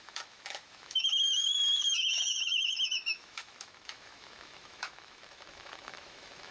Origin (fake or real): fake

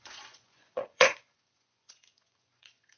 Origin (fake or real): fake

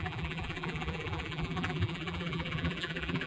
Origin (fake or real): fake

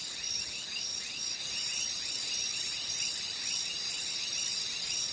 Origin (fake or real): real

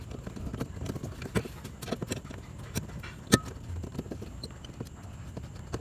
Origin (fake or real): real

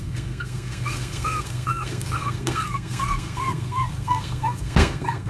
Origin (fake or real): fake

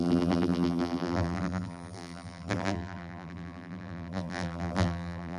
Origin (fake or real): fake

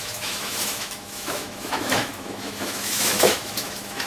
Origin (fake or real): fake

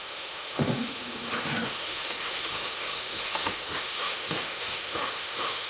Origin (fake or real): fake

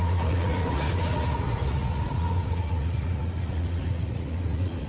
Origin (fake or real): fake